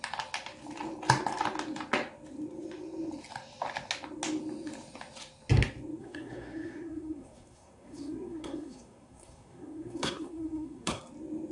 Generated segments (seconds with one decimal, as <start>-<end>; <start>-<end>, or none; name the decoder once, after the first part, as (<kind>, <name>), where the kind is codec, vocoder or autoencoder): 6.0-11.0 (codec, SNAC)